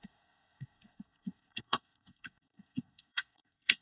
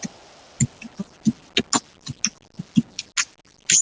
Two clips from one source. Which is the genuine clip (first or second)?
second